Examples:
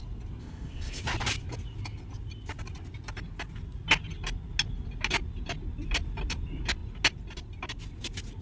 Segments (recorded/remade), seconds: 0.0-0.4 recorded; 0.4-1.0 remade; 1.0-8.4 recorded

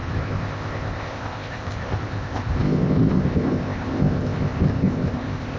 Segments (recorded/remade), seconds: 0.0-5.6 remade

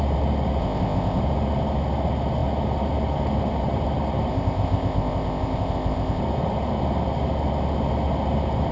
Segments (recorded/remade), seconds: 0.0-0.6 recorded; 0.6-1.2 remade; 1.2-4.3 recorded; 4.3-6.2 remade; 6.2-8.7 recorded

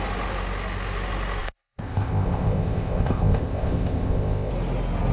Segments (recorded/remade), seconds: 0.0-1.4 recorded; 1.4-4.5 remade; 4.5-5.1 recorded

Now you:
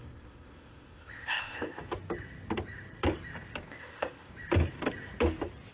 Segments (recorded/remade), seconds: 0.0-1.8 remade; 1.8-3.7 recorded; 3.7-4.3 remade; 4.3-5.7 recorded

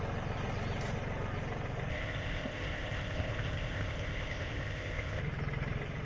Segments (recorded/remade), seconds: 0.0-1.9 recorded; 1.9-5.2 remade; 5.2-6.0 recorded